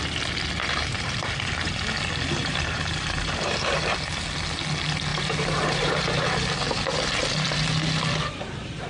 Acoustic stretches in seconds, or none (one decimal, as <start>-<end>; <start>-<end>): 0.0-0.6; 1.8-2.4; 3.8-5.1; 6.0-8.9